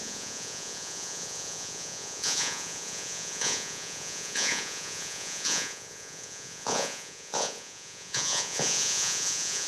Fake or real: fake